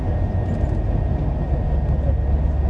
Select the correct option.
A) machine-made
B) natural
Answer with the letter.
B